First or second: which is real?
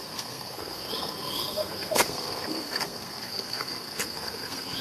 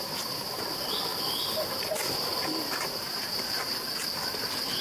second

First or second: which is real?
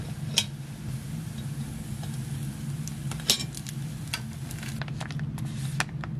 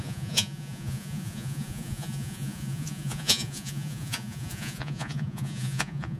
first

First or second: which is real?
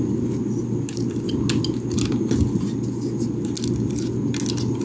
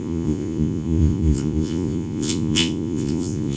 first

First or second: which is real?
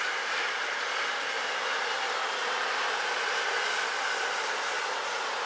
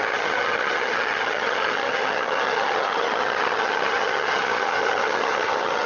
first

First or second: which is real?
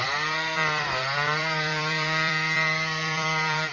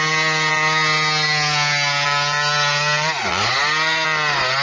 second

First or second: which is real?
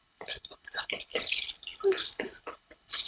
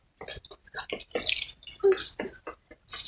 second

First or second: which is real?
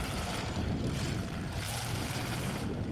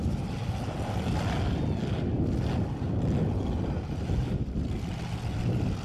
second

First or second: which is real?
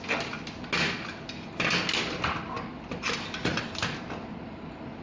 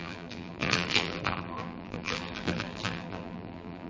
first